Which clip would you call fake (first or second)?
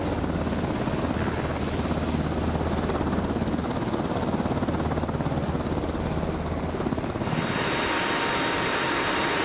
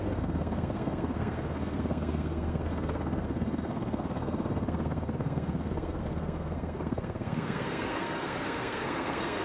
second